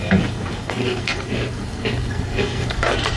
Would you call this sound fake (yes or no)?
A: yes